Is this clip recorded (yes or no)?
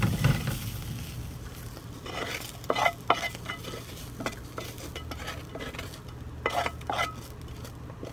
yes